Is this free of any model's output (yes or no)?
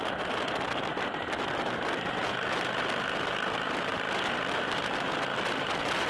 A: yes